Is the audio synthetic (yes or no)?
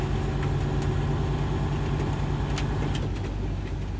no